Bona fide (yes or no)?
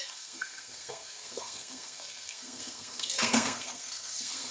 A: no